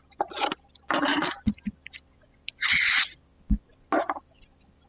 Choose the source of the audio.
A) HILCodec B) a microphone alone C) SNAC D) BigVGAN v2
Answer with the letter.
B